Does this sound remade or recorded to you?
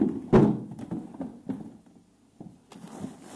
recorded